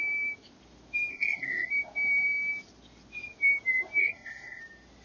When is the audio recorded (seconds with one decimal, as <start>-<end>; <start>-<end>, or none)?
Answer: 0.0-1.1; 1.7-4.0; 4.6-5.0